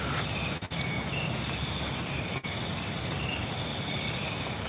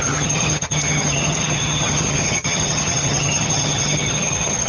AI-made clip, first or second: second